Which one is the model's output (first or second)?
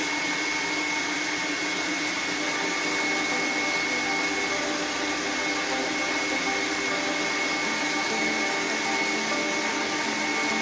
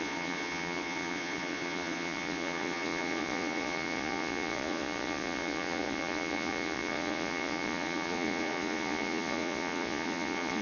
second